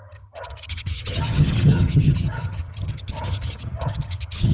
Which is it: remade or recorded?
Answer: remade